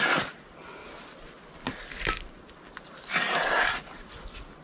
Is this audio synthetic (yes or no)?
no